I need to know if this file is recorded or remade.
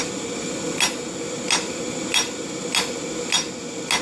recorded